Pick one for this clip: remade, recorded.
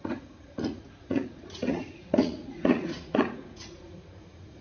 remade